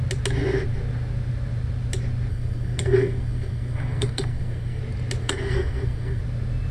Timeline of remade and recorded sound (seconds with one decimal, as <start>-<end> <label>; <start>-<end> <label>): 0.0-2.3 recorded; 2.3-4.8 remade; 4.8-5.2 recorded; 5.2-6.2 remade; 6.2-6.7 recorded